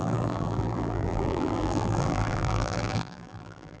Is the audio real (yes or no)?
no